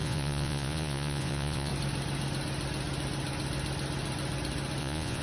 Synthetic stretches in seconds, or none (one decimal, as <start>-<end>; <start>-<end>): 0.0-1.7; 4.8-5.2